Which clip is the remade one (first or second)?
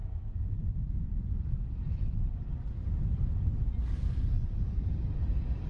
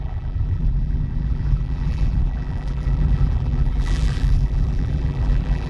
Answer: second